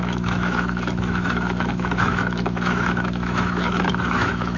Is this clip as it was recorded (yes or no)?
no